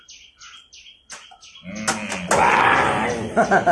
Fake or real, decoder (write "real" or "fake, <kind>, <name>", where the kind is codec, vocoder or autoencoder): real